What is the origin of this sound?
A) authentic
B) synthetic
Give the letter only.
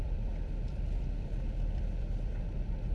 B